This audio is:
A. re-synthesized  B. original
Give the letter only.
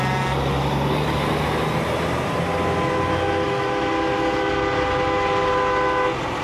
B